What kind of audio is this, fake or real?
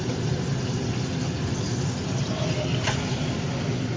real